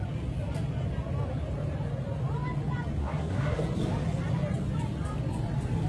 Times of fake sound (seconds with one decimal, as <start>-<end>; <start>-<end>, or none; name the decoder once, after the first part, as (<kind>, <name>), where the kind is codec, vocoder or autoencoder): 3.0-3.6 (codec, SNAC)